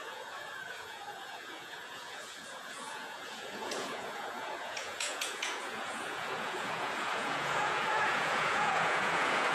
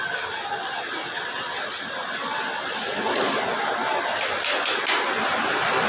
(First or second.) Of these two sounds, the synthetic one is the first